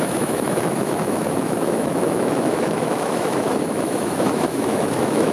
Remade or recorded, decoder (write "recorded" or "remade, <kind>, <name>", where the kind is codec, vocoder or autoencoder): remade, autoencoder, DAC-VAE